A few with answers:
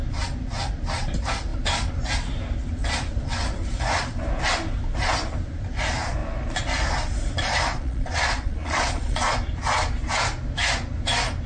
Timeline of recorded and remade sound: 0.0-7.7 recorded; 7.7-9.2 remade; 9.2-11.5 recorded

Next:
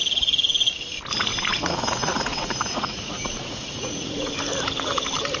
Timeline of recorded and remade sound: 0.0-1.3 recorded; 1.3-4.3 remade; 4.3-5.4 recorded

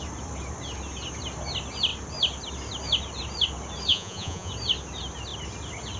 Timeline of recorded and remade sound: 0.0-3.9 recorded; 3.9-4.5 remade; 4.5-6.0 recorded

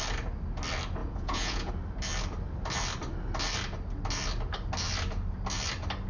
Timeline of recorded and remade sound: 0.0-1.0 recorded; 1.0-1.7 remade; 1.7-6.1 recorded

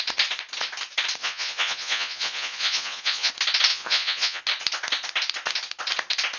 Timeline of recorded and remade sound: 0.0-1.2 recorded; 1.2-3.3 remade; 3.3-3.7 recorded; 3.7-4.4 remade; 4.4-6.4 recorded

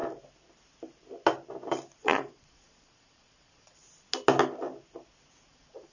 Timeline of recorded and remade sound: 0.0-2.0 recorded; 2.0-3.8 remade; 3.8-5.5 recorded; 5.5-5.9 remade

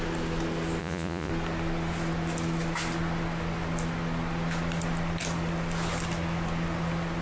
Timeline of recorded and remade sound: 0.0-0.8 recorded; 0.8-1.3 remade; 1.3-7.2 recorded

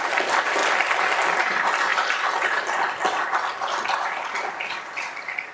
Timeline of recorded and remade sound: 0.0-5.5 recorded